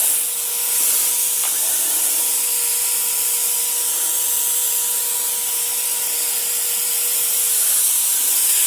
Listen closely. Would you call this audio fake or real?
real